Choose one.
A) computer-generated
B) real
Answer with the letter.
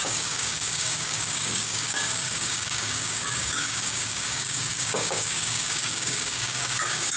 A